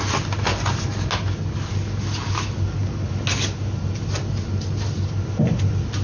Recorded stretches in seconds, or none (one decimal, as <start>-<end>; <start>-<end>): 0.0-6.0